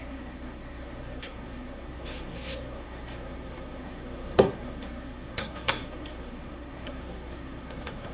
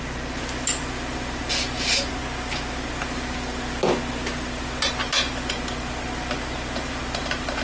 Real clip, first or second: second